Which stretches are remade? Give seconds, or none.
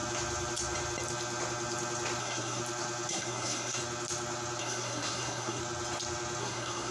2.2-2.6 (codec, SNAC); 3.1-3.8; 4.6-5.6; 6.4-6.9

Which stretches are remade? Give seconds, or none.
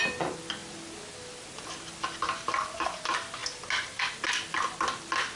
none